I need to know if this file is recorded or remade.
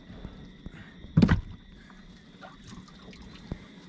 recorded